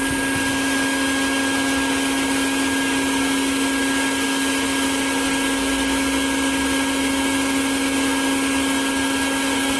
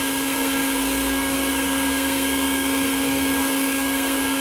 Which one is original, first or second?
first